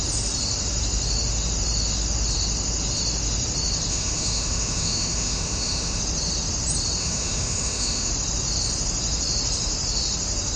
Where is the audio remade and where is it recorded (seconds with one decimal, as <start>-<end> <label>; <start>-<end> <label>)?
0.0-3.9 recorded; 3.9-6.0 remade; 6.0-7.0 recorded; 7.0-8.1 remade; 8.1-10.6 recorded